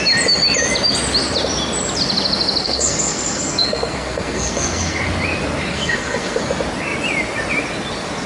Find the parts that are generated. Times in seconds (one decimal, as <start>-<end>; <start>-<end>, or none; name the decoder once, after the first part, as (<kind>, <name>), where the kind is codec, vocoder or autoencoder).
2.6-5.0 (codec, SNAC); 5.7-6.4